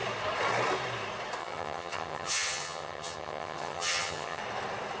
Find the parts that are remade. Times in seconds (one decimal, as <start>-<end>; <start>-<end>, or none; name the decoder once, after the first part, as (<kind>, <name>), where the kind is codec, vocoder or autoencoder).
1.4-4.4 (vocoder, HiFi-GAN)